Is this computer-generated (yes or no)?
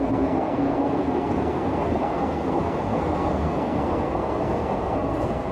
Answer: yes